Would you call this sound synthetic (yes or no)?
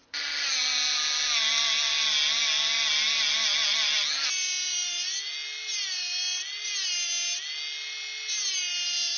no